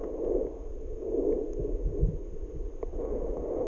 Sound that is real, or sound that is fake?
real